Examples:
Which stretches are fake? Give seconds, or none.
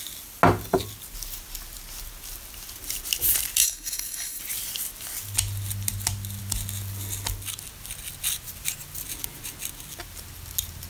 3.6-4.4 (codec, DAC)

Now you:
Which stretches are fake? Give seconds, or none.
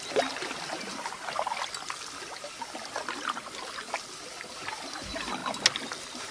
none